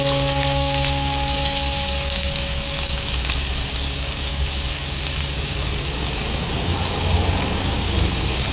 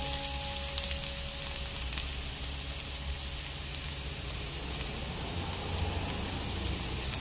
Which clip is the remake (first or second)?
first